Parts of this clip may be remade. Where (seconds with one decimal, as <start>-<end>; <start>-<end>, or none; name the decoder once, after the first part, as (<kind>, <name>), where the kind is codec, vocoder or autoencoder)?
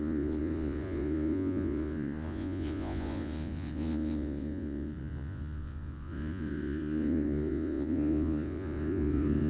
0.0-9.5 (vocoder, Vocos)